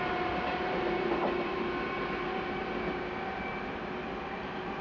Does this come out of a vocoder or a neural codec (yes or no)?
no